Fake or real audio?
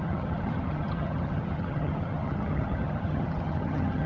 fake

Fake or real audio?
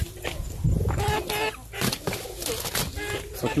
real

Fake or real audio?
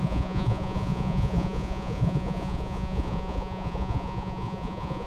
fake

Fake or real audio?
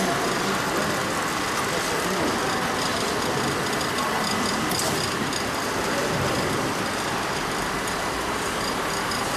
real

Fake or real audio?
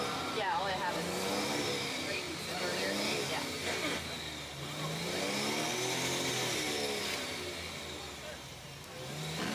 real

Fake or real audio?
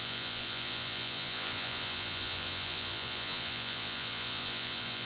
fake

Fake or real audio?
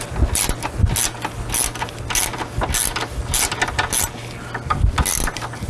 real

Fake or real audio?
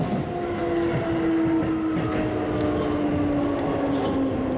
real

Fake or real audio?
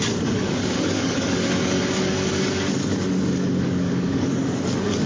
fake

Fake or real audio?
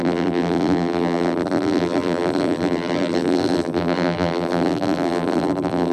fake